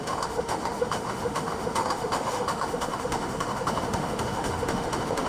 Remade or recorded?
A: remade